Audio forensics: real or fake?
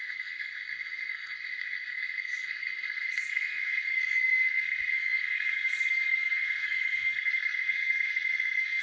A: fake